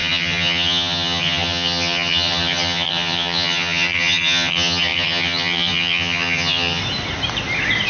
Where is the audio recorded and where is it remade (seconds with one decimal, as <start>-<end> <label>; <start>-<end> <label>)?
0.0-6.8 remade; 6.8-7.9 recorded